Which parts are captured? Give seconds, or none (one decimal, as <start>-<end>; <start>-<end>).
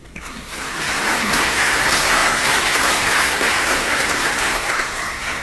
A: none